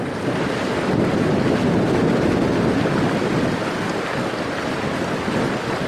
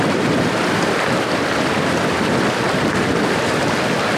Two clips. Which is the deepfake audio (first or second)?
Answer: second